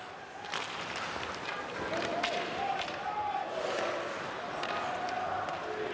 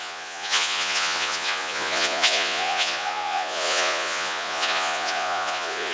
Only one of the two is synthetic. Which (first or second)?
second